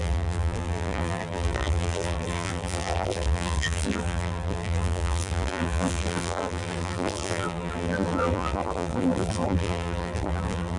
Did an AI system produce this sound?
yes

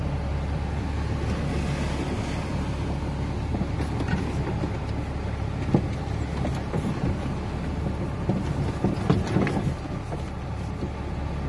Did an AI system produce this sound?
no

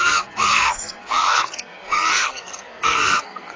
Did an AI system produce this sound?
yes